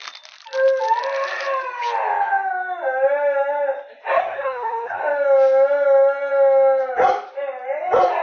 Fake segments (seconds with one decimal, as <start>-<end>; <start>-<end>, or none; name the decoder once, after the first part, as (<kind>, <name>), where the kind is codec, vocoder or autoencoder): 4.2-5.0 (codec, SNAC)